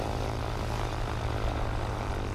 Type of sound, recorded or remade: recorded